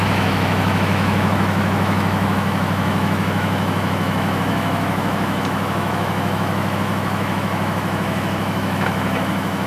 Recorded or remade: remade